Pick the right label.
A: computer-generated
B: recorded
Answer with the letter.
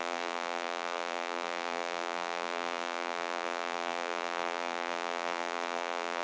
A